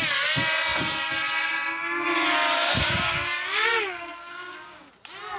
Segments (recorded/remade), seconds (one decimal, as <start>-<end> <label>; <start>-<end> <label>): 0.0-2.6 recorded; 2.6-4.9 remade; 4.9-5.4 recorded